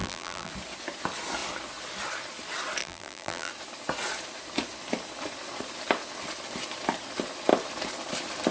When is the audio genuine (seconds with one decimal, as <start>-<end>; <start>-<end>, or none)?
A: 0.5-2.8; 3.5-8.5